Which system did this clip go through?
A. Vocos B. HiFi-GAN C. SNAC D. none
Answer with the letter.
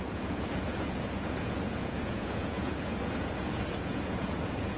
A